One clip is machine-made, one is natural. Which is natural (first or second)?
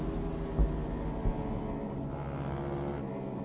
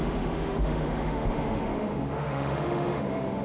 first